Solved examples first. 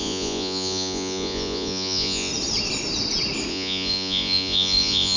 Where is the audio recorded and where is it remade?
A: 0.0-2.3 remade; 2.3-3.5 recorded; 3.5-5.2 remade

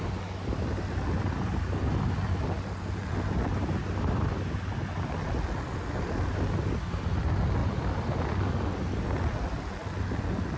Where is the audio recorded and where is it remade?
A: 0.0-10.6 recorded